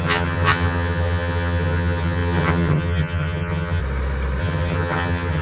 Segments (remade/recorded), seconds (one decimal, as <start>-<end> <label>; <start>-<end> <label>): 0.0-3.8 remade; 3.8-4.4 recorded; 4.4-5.4 remade